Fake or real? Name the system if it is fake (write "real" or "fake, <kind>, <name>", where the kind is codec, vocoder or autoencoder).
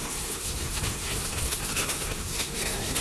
fake, codec, SNAC